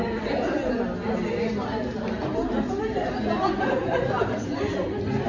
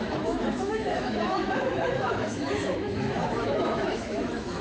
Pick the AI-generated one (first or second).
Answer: second